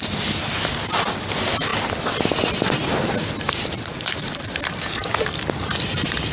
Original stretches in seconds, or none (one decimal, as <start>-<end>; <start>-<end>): 0.0-6.3